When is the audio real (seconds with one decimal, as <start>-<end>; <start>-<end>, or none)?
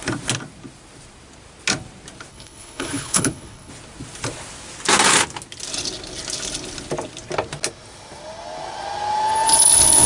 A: 0.0-2.3; 3.7-10.1